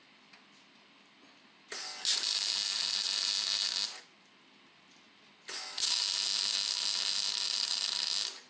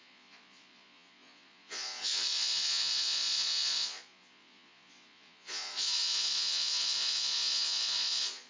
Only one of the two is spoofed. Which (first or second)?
second